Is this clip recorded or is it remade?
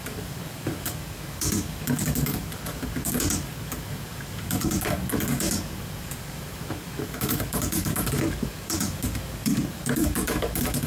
remade